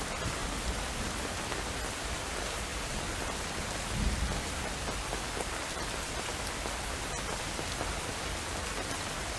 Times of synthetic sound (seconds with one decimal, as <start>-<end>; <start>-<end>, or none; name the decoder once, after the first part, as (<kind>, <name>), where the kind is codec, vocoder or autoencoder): none